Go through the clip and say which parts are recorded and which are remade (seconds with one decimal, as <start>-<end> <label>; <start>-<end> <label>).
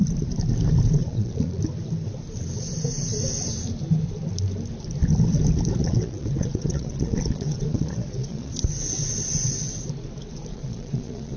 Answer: 0.0-1.0 recorded; 1.0-1.6 remade; 1.6-5.8 recorded; 5.8-8.5 remade; 8.5-10.5 recorded; 10.5-11.4 remade